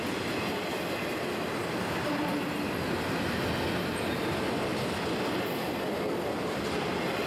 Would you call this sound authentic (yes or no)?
yes